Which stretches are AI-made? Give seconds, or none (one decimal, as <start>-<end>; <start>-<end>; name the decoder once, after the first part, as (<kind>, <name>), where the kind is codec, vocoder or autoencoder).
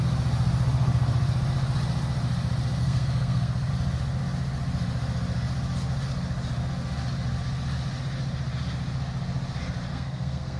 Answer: 2.8-3.7 (codec, SNAC); 9.9-10.6